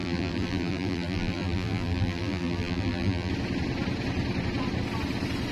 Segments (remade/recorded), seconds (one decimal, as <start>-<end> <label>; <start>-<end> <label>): 0.0-3.3 remade; 3.3-5.5 recorded